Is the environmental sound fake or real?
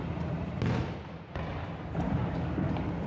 real